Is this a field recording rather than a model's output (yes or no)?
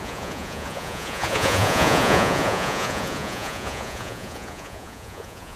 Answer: no